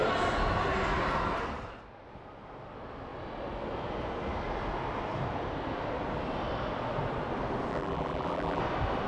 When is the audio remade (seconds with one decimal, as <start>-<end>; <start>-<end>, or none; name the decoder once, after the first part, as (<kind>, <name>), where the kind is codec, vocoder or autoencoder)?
7.7-8.6 (vocoder, BigVGAN v2)